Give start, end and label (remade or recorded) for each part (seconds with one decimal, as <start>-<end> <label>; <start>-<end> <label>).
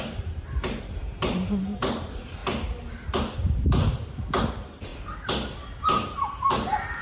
0.0-2.4 remade; 2.4-3.6 recorded; 3.6-4.9 remade; 4.9-5.7 recorded; 5.7-7.0 remade